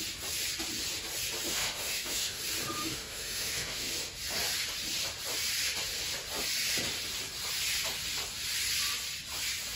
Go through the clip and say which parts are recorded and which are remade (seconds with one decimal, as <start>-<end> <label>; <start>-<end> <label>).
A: 0.0-1.5 recorded; 1.5-2.4 remade; 2.4-2.8 recorded; 2.8-3.9 remade; 3.9-9.8 recorded